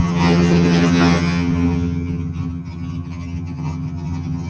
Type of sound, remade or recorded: remade